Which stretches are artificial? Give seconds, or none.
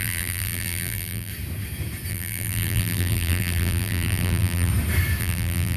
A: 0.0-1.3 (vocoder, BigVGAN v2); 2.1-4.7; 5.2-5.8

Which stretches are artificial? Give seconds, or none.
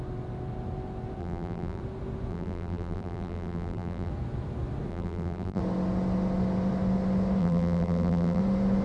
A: 1.2-1.8 (vocoder, BigVGAN v2); 2.3-4.1; 4.9-5.6; 7.4-8.4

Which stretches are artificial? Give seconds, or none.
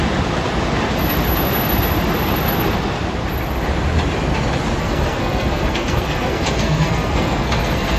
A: 4.8-8.0 (codec, SNAC)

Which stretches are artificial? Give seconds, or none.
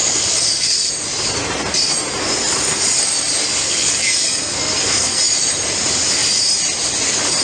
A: 0.0-0.9 (codec, SNAC); 3.6-5.2